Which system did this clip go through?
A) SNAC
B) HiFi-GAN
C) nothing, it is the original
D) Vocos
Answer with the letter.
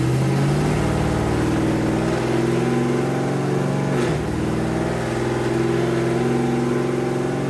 C